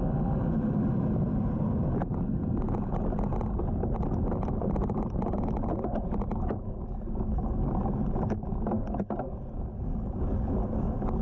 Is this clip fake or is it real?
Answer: real